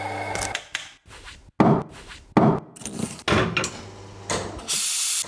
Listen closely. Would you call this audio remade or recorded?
recorded